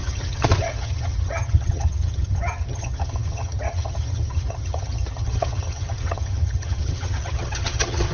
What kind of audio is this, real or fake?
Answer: fake